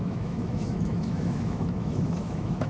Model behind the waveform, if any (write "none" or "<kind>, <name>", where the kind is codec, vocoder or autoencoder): autoencoder, DAC-VAE